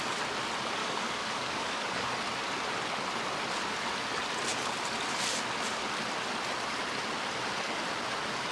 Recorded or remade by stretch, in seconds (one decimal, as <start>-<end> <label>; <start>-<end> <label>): 0.0-0.8 recorded; 0.8-2.1 remade; 2.1-8.5 recorded